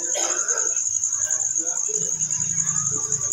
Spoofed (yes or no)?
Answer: no